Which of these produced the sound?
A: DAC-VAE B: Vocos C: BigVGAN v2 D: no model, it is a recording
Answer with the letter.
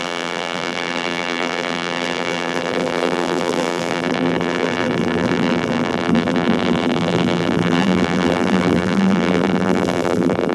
C